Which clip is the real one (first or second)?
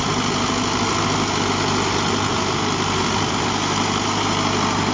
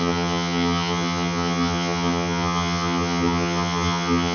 first